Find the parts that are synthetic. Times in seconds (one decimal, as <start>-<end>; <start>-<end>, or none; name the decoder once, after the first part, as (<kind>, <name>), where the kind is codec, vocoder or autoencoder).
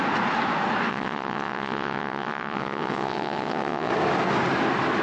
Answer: 0.9-3.9 (vocoder, WaveNeXt)